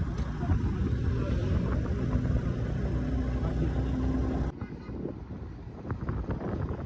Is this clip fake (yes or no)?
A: no